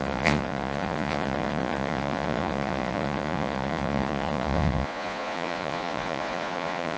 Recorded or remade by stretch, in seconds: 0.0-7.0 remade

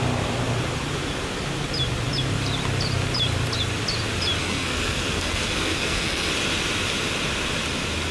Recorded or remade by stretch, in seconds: 0.0-4.4 recorded; 4.4-6.3 remade; 6.3-8.1 recorded